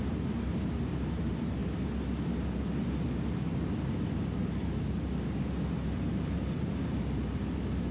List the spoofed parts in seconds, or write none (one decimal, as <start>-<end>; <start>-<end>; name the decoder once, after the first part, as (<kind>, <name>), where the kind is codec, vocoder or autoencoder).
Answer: none